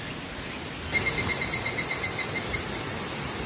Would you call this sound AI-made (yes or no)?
no